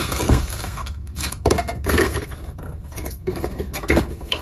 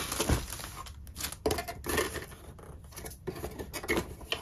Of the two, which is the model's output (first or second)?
first